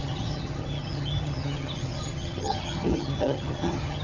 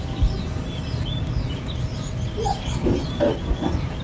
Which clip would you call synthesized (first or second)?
first